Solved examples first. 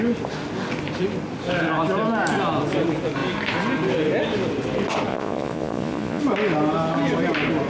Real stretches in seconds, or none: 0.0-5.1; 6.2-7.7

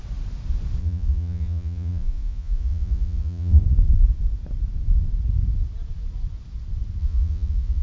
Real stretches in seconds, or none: 0.0-0.8; 3.6-7.0

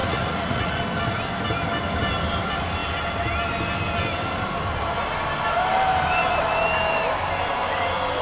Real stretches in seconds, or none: 0.8-8.2

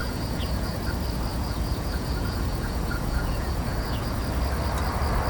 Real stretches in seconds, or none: 0.8-1.3; 4.2-5.3

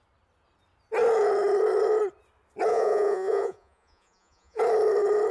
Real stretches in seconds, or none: 0.0-2.7; 4.6-5.3

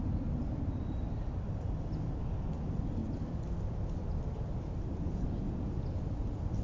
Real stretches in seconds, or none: 0.0-6.6

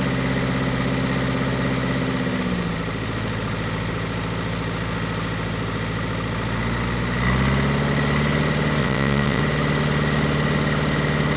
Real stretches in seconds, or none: 0.0-8.8; 9.4-11.4

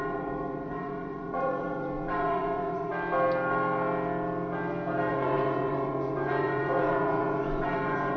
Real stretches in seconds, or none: 2.9-5.1